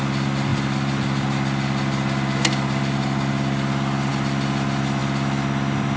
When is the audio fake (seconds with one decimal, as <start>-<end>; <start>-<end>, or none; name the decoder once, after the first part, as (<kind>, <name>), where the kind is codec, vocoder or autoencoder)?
none